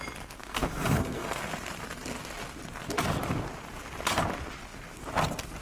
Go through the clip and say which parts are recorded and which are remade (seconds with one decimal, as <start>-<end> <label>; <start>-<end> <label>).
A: 0.0-0.4 recorded; 0.4-1.4 remade; 1.4-5.6 recorded